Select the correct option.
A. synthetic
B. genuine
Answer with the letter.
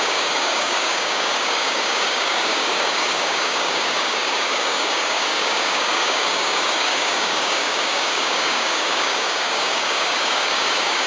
A